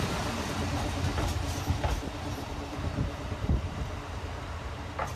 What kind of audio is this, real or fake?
fake